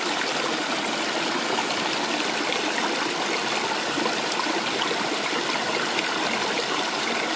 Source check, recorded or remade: recorded